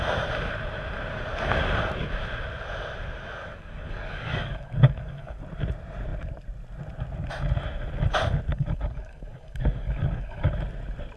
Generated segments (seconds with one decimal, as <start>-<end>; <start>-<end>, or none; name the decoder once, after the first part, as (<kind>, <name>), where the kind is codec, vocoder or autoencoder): 3.4-5.4 (codec, DAC); 8.5-10.5